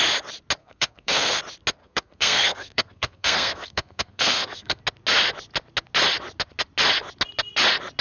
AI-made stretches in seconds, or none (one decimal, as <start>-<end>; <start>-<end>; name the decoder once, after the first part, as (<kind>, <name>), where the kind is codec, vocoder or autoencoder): 0.6-1.4 (codec, SNAC); 1.8-4.8